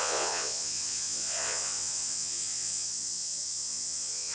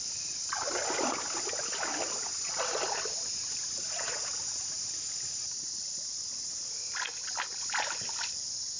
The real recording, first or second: second